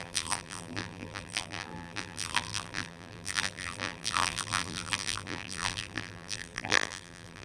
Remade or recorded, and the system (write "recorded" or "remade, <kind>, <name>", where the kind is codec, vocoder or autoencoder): remade, vocoder, BigVGAN v2